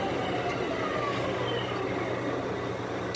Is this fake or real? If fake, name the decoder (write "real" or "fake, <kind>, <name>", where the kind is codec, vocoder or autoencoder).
real